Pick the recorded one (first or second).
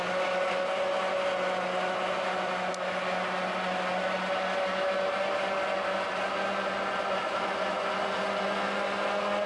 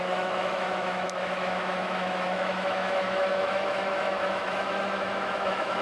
first